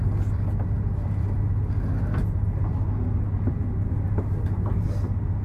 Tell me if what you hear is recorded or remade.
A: recorded